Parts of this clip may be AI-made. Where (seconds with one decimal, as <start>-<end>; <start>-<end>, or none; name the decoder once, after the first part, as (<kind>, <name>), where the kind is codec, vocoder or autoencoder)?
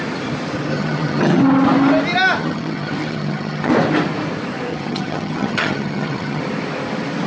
0.7-1.4 (vocoder, HiFi-GAN); 2.4-3.7; 4.7-6.4